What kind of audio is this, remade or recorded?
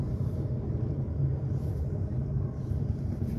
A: recorded